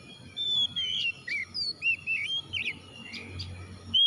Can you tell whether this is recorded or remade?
remade